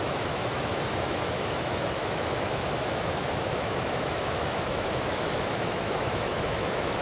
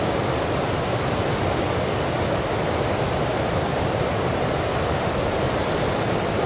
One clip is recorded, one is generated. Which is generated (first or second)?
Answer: first